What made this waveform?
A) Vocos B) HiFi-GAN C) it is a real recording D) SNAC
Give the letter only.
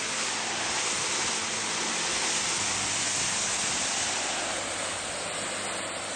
C